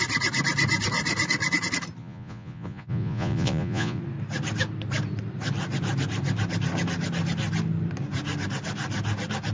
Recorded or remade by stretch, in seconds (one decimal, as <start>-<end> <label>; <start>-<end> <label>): 0.0-2.0 recorded; 2.0-4.0 remade; 4.0-9.5 recorded